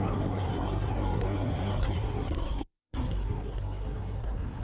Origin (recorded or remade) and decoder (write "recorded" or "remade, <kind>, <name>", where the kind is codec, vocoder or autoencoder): remade, codec, SNAC